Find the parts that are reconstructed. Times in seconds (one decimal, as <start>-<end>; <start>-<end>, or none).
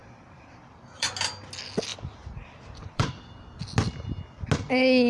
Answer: 0.0-1.1; 1.9-3.4